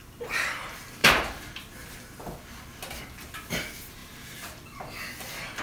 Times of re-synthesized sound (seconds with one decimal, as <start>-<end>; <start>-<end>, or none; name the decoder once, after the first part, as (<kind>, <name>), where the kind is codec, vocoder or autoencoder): 1.0-2.0 (vocoder, BigVGAN v2)